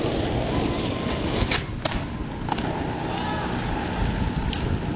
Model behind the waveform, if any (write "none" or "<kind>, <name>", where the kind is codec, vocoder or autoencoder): none